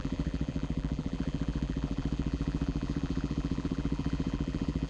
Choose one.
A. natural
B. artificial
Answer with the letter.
B